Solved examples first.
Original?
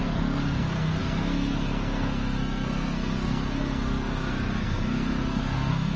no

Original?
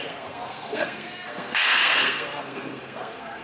no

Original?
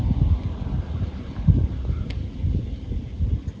yes